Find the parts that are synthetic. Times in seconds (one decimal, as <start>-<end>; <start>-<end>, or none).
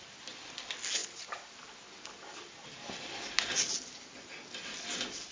none